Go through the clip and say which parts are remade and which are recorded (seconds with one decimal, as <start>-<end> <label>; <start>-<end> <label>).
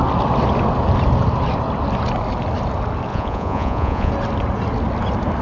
0.0-3.1 recorded; 3.1-4.1 remade; 4.1-5.4 recorded